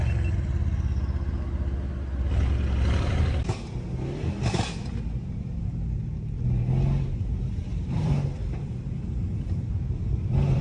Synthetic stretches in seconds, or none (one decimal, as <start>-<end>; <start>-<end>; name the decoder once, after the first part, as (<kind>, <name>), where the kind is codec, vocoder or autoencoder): 7.7-10.6 (vocoder, BigVGAN v2)